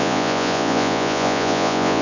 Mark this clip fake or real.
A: fake